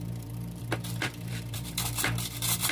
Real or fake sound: fake